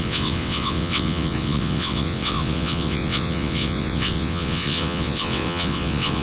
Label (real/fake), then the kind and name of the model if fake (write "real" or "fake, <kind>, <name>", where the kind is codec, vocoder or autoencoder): fake, vocoder, WaveNeXt